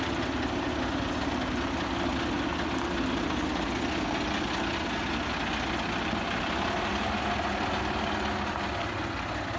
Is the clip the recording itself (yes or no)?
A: yes